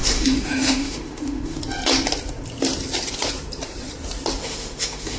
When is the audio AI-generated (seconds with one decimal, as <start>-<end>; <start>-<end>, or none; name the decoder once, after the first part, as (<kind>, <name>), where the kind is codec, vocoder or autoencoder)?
0.0-1.6 (autoencoder, DAC-VAE); 4.4-5.2

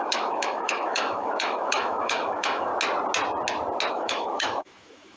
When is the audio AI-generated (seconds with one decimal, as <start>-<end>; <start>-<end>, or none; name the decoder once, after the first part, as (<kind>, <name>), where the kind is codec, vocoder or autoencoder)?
0.0-2.7 (autoencoder, DAC-VAE); 3.9-5.2

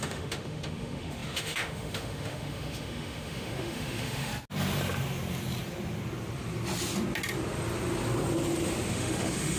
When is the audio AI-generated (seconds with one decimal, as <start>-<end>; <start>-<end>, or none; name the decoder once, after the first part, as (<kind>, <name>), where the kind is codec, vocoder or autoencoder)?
0.0-4.3 (autoencoder, DAC-VAE); 8.9-9.6